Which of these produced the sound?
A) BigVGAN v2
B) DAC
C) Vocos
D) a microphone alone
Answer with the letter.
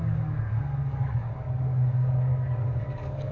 B